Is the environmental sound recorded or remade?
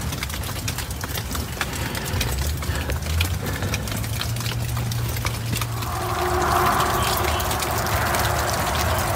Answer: recorded